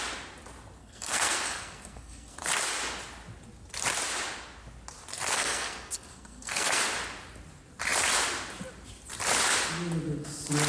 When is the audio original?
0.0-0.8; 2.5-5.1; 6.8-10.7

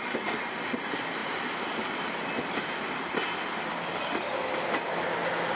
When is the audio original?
0.0-5.6

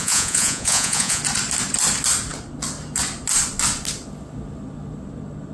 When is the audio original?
1.2-5.5

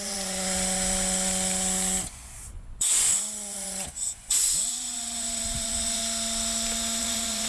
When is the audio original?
6.0-7.0

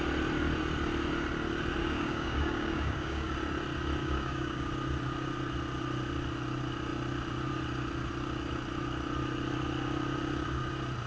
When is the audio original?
0.0-1.8; 3.3-4.0; 4.7-11.1